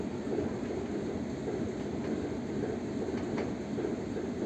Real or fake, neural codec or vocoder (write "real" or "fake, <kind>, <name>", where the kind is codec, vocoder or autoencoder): real